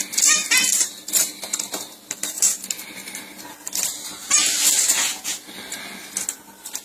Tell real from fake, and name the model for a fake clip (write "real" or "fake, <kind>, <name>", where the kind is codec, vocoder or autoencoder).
real